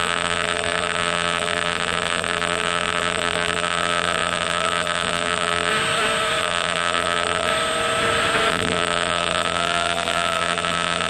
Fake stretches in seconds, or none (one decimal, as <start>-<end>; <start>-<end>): 0.0-5.7; 6.4-7.5; 8.5-11.1